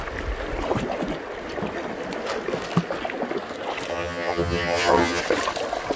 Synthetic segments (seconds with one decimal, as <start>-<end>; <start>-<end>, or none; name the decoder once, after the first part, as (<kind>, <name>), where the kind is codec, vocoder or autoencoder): 3.9-5.2 (vocoder, HiFi-GAN)